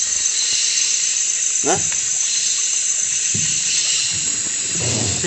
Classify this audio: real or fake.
fake